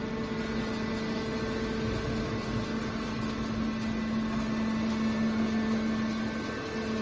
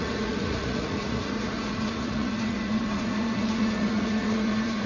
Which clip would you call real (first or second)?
first